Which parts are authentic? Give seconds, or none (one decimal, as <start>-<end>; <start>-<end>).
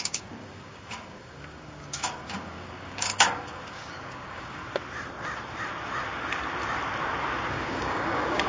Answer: 4.6-7.5